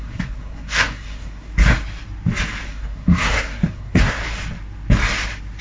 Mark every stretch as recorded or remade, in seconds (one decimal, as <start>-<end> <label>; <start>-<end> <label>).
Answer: 0.0-1.5 remade; 1.5-2.7 recorded; 2.7-4.2 remade; 4.2-5.6 recorded